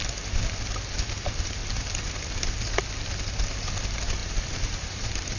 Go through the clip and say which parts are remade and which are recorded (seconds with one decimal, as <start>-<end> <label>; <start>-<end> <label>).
0.0-4.2 recorded; 4.2-5.4 remade